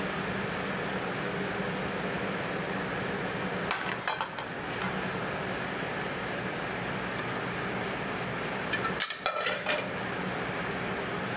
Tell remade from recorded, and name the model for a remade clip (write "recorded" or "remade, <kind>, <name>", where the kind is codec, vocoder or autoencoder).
recorded